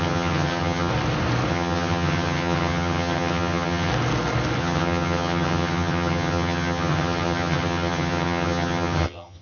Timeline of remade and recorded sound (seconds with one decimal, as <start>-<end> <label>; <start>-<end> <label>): 0.0-0.9 remade; 0.9-1.5 recorded; 1.5-3.9 remade; 3.9-4.6 recorded; 4.6-9.4 remade